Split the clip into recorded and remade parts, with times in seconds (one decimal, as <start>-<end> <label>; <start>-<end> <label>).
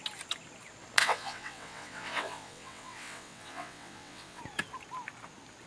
0.0-1.0 recorded; 1.0-4.4 remade; 4.4-5.7 recorded